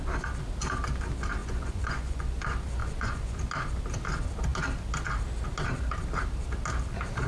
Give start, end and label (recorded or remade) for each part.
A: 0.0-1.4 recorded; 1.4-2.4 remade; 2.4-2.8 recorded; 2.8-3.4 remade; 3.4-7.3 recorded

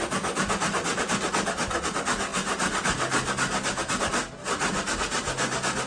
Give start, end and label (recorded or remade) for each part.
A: 0.0-5.9 recorded

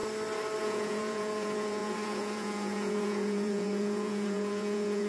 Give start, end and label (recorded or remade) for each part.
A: 0.0-0.6 recorded; 0.6-5.1 remade

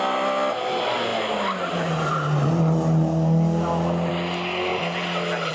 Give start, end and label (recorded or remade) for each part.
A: 0.0-5.5 recorded

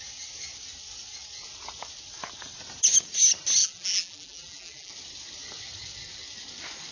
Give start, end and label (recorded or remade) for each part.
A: 0.0-3.6 recorded; 3.6-4.9 remade; 4.9-6.9 recorded

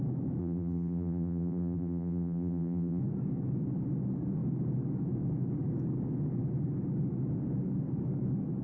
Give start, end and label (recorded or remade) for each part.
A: 0.0-0.4 recorded; 0.4-3.0 remade; 3.0-8.6 recorded

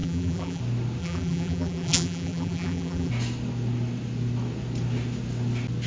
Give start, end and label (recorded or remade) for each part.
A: 0.0-0.6 remade; 0.6-1.0 recorded; 1.0-3.1 remade; 3.1-5.9 recorded